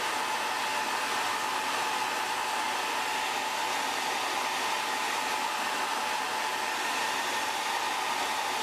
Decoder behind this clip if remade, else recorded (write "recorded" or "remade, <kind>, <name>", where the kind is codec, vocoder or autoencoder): recorded